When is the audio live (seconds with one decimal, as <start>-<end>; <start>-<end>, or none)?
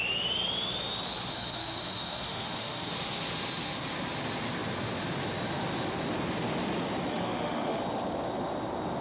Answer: 0.0-1.3; 2.9-7.1; 7.8-9.0